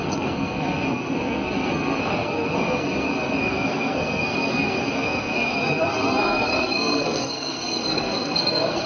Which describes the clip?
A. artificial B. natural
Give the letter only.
A